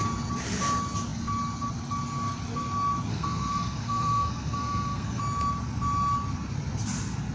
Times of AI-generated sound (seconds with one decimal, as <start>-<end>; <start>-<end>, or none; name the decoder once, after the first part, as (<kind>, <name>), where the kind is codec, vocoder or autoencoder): 3.1-5.2 (codec, SNAC)